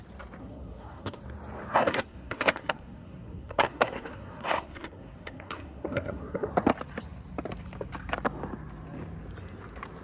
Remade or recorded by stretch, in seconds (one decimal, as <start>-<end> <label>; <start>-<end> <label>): 0.0-0.4 recorded; 0.4-1.2 remade; 1.2-1.7 recorded; 1.7-6.5 remade; 6.5-10.0 recorded